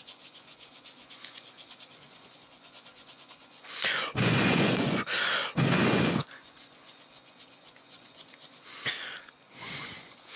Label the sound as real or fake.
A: fake